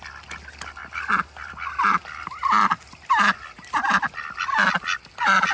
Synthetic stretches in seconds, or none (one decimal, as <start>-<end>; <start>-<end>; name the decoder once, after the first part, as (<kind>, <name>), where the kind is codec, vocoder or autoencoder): none